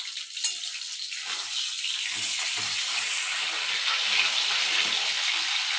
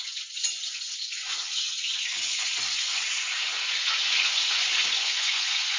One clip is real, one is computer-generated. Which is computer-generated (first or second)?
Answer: second